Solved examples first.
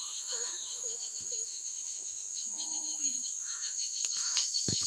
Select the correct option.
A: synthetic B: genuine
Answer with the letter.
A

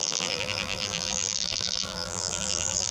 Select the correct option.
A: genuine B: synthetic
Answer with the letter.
B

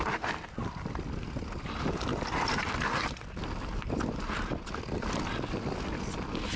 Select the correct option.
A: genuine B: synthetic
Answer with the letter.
A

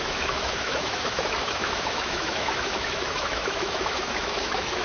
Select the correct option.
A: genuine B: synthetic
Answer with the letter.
B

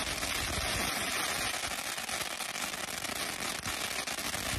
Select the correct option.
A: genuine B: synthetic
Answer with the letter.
A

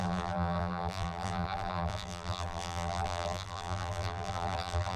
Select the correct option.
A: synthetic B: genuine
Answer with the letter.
A